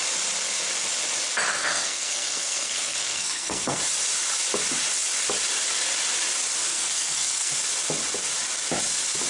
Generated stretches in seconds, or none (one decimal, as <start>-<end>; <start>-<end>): 1.5-3.8; 6.7-7.5